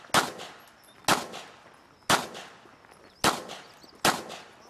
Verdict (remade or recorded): recorded